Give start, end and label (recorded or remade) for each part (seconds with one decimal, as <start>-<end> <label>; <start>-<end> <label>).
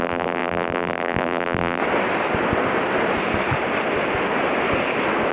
0.0-1.8 remade; 1.8-5.3 recorded